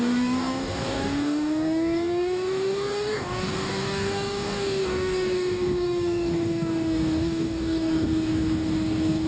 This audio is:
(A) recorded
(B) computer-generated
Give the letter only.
B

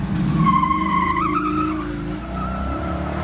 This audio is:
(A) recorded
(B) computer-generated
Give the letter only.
A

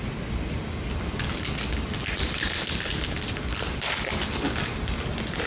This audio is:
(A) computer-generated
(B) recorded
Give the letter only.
B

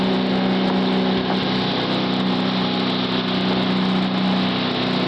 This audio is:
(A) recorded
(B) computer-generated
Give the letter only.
A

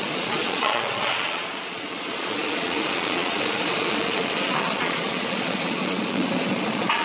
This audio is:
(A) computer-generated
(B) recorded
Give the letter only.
A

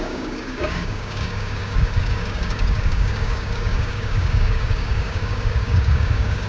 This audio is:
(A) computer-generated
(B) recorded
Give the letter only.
A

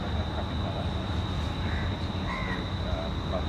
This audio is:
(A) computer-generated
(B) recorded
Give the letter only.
B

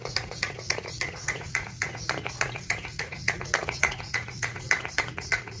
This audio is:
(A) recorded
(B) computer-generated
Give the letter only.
B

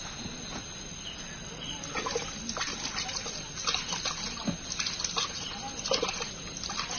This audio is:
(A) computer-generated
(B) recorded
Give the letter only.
B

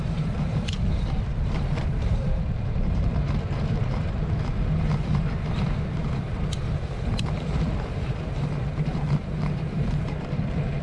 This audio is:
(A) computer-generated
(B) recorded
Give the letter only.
A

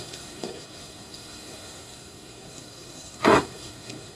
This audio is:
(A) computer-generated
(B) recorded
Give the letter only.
A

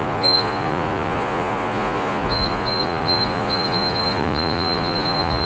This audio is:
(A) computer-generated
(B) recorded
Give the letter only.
A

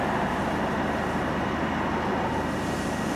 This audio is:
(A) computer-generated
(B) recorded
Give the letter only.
B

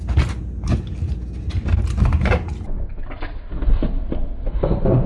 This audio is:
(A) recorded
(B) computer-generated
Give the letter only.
A